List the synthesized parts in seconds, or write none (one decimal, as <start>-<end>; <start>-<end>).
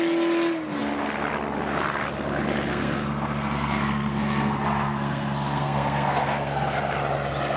2.7-6.8